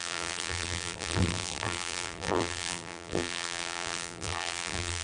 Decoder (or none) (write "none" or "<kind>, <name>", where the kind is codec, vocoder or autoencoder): vocoder, BigVGAN v2